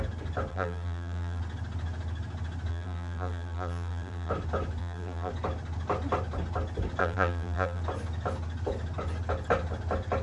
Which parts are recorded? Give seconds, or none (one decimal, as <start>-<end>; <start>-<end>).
0.0-0.5; 1.4-2.7; 4.3-4.8; 5.3-7.0; 7.8-10.2